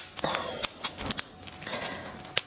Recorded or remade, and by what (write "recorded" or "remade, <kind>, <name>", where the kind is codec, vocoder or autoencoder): recorded